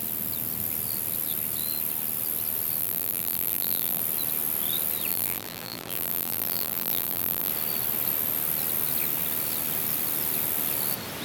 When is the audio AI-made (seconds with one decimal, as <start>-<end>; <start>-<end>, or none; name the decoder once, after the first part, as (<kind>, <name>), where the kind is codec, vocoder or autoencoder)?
2.8-4.0 (vocoder, BigVGAN v2); 5.1-7.5

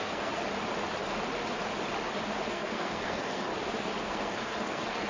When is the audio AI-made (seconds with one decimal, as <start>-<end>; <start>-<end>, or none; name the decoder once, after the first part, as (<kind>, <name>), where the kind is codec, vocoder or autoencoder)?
0.0-0.4 (codec, SNAC); 2.5-3.5; 4.0-5.1